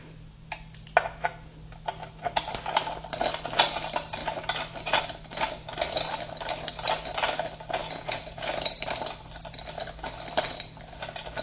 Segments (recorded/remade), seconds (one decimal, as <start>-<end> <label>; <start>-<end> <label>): 0.0-7.8 recorded; 7.8-8.5 remade; 8.5-11.4 recorded